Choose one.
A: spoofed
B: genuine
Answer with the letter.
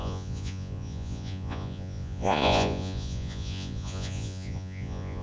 A